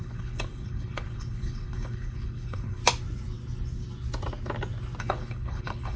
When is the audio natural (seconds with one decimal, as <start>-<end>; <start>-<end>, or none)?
2.8-5.0